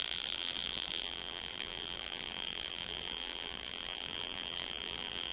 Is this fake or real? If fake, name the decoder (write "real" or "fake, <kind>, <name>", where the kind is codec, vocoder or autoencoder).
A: fake, vocoder, BigVGAN v2